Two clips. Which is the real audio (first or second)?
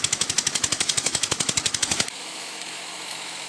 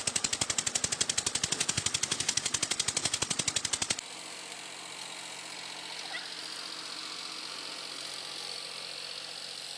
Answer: second